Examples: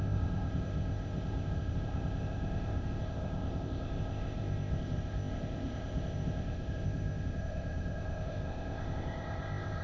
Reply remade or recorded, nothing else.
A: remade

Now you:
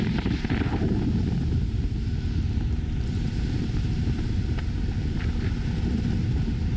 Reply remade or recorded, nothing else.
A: remade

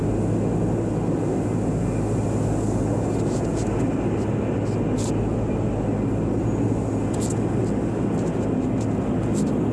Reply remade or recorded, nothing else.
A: recorded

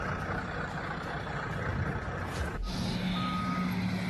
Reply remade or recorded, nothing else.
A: recorded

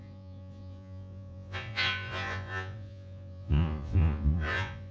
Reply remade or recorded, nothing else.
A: remade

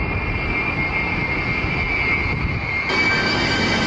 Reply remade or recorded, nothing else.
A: recorded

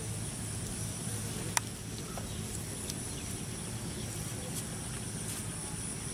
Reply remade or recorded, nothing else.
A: recorded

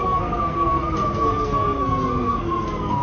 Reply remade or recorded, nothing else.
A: remade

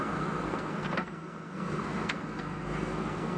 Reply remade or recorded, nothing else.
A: remade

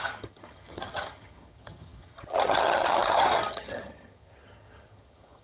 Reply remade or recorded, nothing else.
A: remade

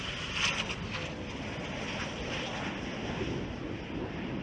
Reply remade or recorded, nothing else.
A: recorded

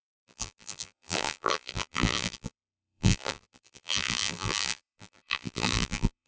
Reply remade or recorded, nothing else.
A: remade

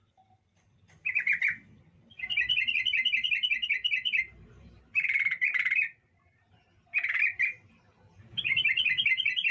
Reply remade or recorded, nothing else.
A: remade